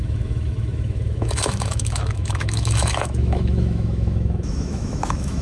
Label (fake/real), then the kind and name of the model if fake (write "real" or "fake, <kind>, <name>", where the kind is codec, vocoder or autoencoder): fake, autoencoder, DAC-VAE